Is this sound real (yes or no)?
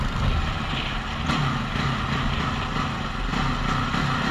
yes